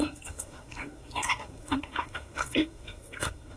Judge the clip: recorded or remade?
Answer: remade